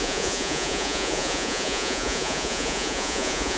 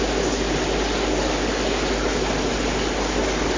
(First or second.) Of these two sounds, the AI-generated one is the first